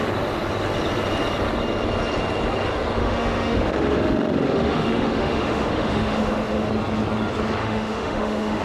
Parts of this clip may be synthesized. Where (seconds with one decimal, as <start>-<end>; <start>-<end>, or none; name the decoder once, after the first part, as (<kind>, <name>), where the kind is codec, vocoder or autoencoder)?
3.0-6.7 (autoencoder, DAC-VAE); 7.6-8.6